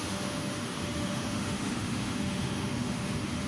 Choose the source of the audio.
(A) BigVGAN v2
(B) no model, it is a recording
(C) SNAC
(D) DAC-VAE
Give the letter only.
D